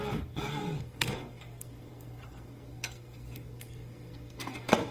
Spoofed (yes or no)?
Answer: yes